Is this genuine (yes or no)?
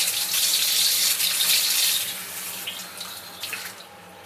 yes